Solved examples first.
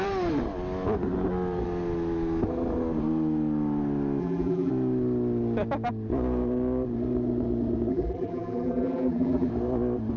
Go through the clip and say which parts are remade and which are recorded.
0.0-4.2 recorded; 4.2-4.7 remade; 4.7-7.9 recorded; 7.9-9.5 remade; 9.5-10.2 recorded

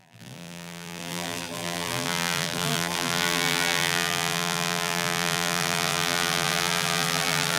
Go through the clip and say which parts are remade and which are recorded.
0.0-7.6 remade

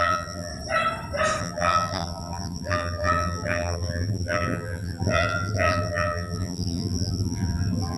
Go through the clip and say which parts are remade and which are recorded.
0.0-0.5 remade; 0.5-1.4 recorded; 1.4-8.0 remade

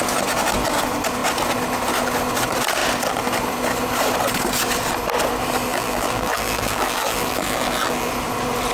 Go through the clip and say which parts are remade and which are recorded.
0.0-5.7 recorded; 5.7-8.1 remade; 8.1-8.7 recorded

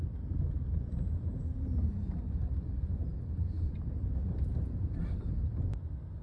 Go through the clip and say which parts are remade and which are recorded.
0.0-0.9 recorded; 0.9-2.3 remade; 2.3-3.0 recorded; 3.0-5.3 remade; 5.3-6.2 recorded

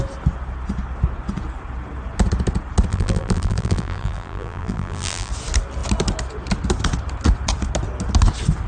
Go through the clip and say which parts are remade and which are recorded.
0.0-2.9 recorded; 2.9-5.3 remade; 5.3-8.7 recorded

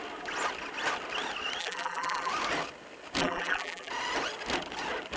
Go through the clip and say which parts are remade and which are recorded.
0.0-1.6 recorded; 1.6-2.3 remade; 2.3-3.2 recorded; 3.2-3.9 remade; 3.9-5.2 recorded